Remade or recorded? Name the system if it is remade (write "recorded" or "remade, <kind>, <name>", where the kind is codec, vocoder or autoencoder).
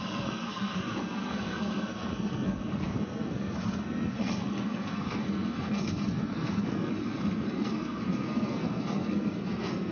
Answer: remade, codec, SNAC